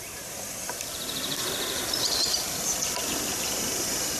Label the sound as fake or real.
fake